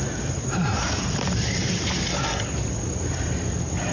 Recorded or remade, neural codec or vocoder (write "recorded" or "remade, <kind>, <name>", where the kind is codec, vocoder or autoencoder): recorded